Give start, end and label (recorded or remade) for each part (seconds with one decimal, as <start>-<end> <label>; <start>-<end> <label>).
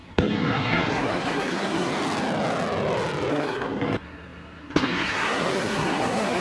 0.0-1.9 remade; 1.9-3.3 recorded; 3.3-6.4 remade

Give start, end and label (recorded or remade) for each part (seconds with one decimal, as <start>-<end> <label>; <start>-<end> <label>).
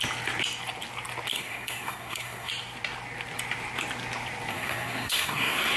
0.0-1.3 recorded; 1.3-2.5 remade; 2.5-4.5 recorded; 4.5-5.8 remade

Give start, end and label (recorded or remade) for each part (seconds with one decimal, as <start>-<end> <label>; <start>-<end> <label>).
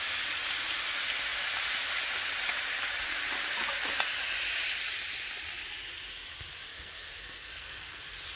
0.0-6.7 recorded; 6.7-8.0 remade; 8.0-8.4 recorded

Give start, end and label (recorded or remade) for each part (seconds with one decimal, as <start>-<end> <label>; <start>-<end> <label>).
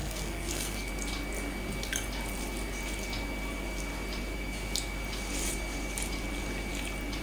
0.0-0.9 remade; 0.9-7.2 recorded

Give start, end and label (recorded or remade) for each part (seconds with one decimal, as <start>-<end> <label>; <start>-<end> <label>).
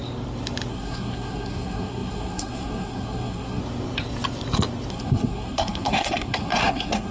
0.0-0.7 recorded; 0.7-3.6 remade; 3.6-4.9 recorded; 4.9-7.1 remade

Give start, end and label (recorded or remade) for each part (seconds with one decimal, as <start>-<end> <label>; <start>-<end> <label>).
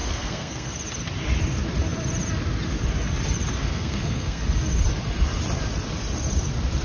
0.0-0.7 remade; 0.7-3.6 recorded; 3.6-4.4 remade; 4.4-6.8 recorded